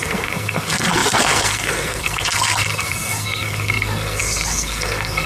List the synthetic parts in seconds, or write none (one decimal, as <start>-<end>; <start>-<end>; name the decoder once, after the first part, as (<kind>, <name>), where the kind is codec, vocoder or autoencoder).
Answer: 0.0-5.3 (codec, SNAC)